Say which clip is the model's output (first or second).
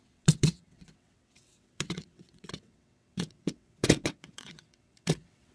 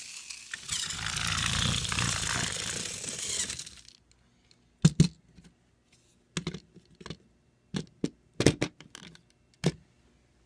first